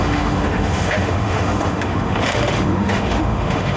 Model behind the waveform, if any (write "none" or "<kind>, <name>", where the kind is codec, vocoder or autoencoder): autoencoder, DAC-VAE